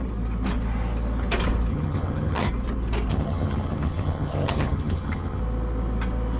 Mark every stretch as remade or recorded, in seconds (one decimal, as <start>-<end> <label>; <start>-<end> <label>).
0.0-1.7 recorded; 1.7-2.5 remade; 2.5-3.1 recorded; 3.1-5.4 remade; 5.4-6.4 recorded